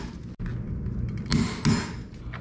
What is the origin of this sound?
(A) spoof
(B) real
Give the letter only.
B